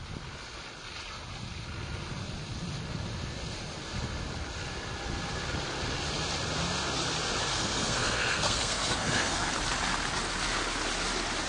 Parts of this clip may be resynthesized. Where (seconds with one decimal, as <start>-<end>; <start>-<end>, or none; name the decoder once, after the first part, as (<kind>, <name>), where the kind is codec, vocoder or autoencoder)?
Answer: 7.5-9.5 (codec, SNAC)